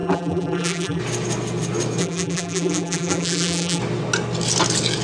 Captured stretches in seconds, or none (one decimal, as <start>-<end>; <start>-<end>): 1.0-2.0; 3.8-5.0